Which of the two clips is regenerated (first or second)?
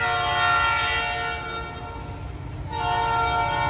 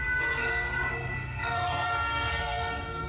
second